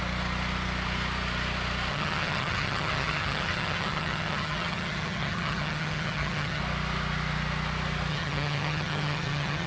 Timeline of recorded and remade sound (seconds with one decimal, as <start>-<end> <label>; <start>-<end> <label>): 0.0-1.9 recorded; 1.9-6.6 remade; 6.6-8.1 recorded; 8.1-9.7 remade